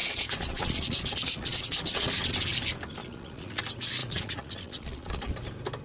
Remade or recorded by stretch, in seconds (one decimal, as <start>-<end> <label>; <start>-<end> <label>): 0.0-2.3 remade; 2.3-3.0 recorded; 3.0-3.6 remade; 3.6-4.0 recorded; 4.0-5.3 remade; 5.3-5.8 recorded